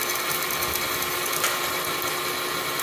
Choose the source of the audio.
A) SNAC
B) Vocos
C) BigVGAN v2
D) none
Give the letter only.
D